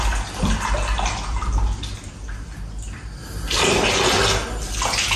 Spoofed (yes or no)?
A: no